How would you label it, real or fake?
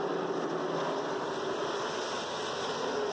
real